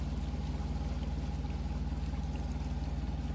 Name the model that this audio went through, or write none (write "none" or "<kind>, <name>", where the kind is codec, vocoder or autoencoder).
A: none